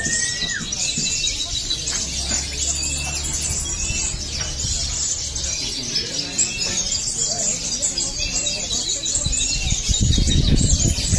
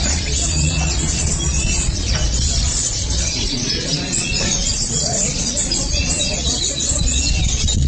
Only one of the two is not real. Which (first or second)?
second